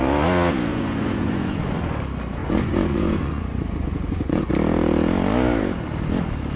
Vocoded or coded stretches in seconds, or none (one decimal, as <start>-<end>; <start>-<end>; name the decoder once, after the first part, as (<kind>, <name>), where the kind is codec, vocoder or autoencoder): 0.7-1.7 (vocoder, Vocos); 2.4-4.5